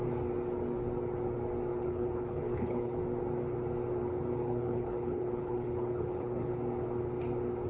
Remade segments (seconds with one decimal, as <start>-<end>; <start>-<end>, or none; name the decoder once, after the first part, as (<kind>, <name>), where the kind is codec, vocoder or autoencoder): 1.7-3.0 (codec, HILCodec); 4.4-6.5